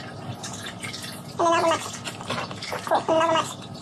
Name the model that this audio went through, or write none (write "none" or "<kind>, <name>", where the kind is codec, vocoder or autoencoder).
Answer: none